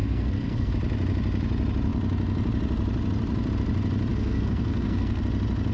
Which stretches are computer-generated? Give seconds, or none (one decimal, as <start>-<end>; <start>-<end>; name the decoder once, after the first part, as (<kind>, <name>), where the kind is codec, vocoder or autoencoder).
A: 0.0-0.7 (codec, SNAC); 4.1-5.2